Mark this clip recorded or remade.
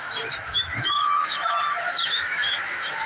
remade